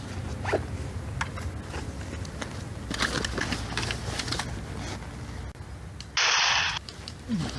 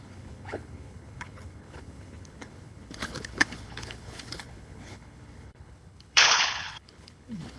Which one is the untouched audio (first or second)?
first